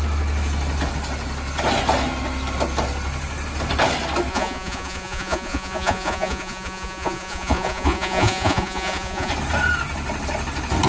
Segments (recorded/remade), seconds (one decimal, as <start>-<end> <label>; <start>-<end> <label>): 0.0-4.3 recorded; 4.3-9.3 remade; 9.3-10.9 recorded